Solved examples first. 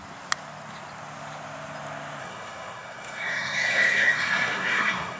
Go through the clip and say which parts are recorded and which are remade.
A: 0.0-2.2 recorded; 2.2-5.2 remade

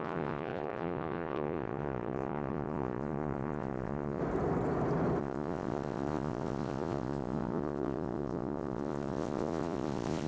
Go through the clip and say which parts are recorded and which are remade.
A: 0.0-4.2 remade; 4.2-5.2 recorded; 5.2-10.3 remade